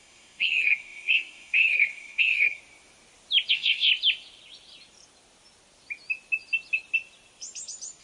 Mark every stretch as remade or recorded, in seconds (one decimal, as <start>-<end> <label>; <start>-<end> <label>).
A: 0.0-2.6 remade; 2.6-3.5 recorded; 3.5-3.9 remade; 3.9-8.0 recorded